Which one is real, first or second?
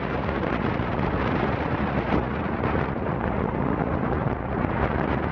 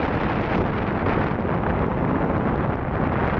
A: second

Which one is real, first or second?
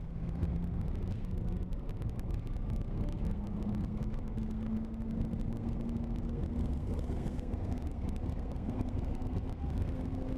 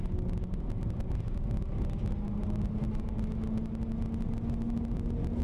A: second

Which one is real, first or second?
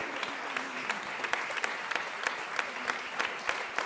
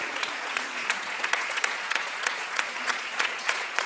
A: first